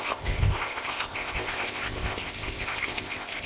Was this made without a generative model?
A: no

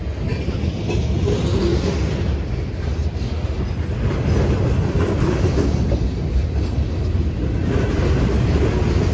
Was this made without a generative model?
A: yes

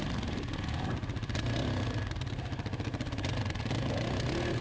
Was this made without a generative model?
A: yes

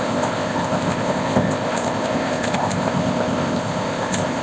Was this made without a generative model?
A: no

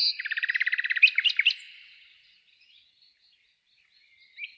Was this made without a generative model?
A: yes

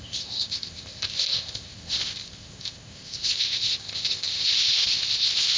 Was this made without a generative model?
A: no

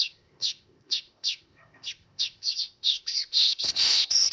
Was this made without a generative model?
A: no